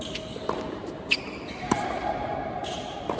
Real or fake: real